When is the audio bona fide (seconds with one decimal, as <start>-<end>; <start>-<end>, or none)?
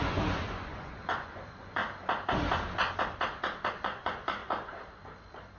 1.8-3.7; 4.4-5.6